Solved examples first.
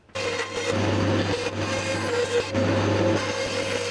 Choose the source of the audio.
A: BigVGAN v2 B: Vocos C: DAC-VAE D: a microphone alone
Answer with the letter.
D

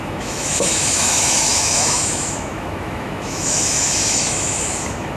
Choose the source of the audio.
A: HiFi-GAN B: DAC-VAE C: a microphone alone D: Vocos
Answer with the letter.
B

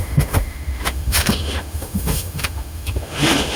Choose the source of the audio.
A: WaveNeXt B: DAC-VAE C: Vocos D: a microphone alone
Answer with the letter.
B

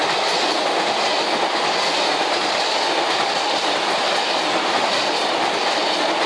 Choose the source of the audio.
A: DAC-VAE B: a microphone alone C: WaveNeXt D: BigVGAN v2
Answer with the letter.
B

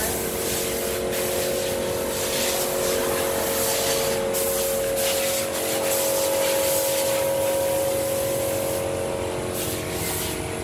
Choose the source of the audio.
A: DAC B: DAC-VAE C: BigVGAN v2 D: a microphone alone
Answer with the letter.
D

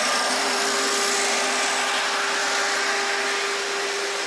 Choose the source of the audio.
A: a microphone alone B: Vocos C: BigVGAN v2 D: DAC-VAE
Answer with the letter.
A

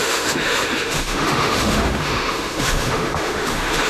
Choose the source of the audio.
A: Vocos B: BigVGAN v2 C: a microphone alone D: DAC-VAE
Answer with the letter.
D